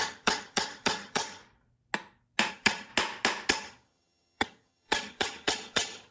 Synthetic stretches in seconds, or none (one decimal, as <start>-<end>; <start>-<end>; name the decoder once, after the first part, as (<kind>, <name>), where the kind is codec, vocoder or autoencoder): 0.0-1.4 (vocoder, HiFi-GAN); 2.5-2.9; 3.5-6.1